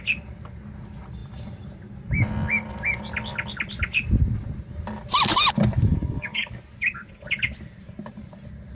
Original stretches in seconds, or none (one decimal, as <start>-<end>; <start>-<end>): 0.0-5.9; 6.5-8.7